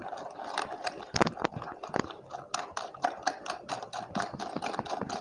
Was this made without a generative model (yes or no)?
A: yes